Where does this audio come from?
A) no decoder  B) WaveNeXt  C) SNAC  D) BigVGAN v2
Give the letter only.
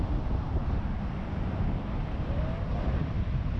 A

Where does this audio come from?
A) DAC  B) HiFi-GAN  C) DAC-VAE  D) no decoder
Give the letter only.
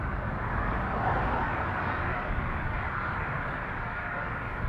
A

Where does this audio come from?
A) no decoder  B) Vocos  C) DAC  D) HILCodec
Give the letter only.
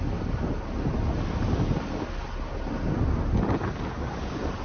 A